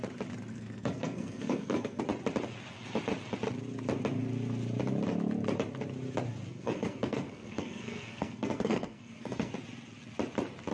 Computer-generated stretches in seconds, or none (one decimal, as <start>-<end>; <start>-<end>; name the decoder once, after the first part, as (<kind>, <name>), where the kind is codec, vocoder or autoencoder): 0.5-2.0 (codec, SNAC); 6.5-9.5